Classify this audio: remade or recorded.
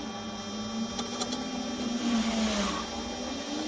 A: recorded